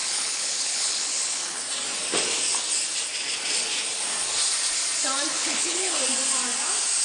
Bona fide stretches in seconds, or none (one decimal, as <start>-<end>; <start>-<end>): 1.6-5.3; 6.0-7.0

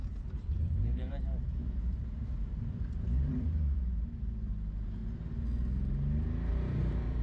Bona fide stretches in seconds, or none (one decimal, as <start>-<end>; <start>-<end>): 0.0-0.5; 5.0-6.5

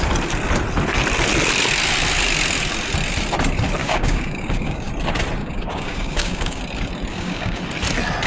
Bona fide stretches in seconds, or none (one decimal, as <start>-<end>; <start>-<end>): 0.0-3.8; 4.9-5.4; 6.6-7.1; 7.6-8.3